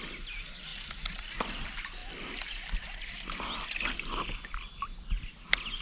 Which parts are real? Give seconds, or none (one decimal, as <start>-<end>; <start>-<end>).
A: 0.0-5.8